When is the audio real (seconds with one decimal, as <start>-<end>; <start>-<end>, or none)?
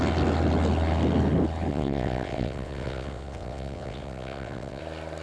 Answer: 0.0-1.7; 4.8-5.2